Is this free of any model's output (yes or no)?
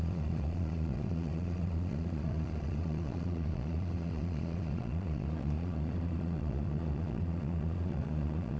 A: no